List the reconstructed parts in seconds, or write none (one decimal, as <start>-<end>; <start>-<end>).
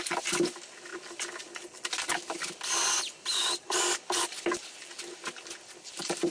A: none